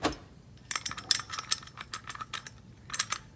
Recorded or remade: recorded